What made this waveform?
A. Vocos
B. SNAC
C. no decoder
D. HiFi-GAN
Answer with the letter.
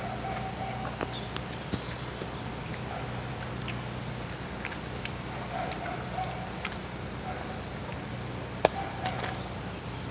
C